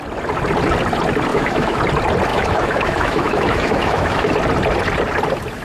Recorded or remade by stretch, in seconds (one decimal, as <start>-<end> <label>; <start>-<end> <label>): 0.0-1.3 recorded; 1.3-1.8 remade; 1.8-2.3 recorded; 2.3-4.3 remade; 4.3-5.6 recorded